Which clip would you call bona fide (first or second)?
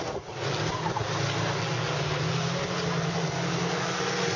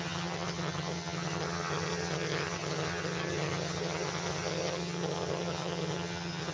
first